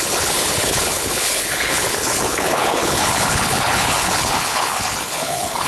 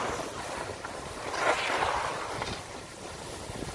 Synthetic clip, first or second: first